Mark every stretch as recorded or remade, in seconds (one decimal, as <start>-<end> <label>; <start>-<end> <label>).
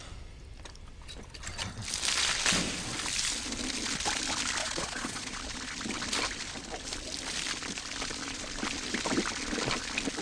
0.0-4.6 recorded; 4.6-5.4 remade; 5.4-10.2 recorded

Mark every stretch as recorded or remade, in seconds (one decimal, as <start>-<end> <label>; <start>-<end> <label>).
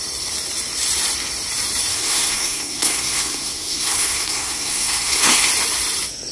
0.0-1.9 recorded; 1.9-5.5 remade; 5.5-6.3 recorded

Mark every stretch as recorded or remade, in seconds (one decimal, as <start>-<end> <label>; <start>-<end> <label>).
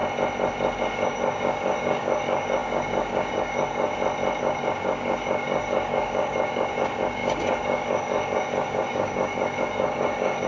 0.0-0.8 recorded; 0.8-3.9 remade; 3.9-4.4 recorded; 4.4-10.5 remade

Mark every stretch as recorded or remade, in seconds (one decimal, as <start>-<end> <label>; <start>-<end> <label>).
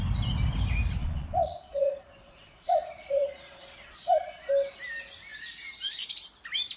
0.0-1.0 recorded; 1.0-4.5 remade; 4.5-6.8 recorded